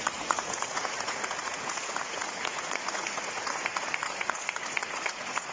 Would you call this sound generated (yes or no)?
yes